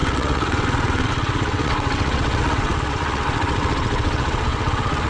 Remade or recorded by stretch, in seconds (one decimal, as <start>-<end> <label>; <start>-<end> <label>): 0.0-5.1 remade